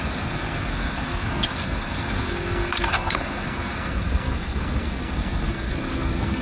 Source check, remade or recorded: remade